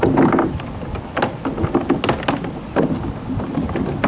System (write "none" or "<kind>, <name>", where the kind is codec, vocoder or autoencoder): none